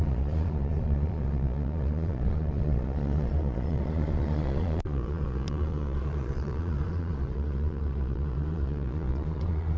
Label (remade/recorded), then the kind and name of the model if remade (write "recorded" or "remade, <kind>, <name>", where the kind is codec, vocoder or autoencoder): remade, vocoder, Vocos